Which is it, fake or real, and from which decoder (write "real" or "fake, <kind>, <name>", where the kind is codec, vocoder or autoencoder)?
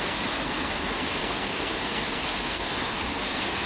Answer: fake, codec, SNAC